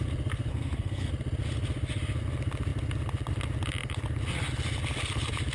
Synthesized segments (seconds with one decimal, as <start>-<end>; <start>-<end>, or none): 0.5-1.1